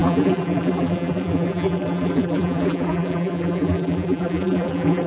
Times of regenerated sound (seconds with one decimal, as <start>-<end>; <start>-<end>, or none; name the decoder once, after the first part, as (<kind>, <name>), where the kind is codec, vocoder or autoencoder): 0.0-5.1 (vocoder, BigVGAN v2)